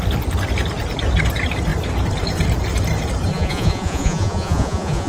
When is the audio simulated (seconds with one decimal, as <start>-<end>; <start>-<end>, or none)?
3.3-5.1